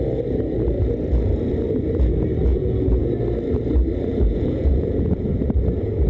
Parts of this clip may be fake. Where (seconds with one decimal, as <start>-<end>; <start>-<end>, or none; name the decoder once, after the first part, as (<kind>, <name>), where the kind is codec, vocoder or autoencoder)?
2.5-3.1 (vocoder, Vocos); 4.1-5.3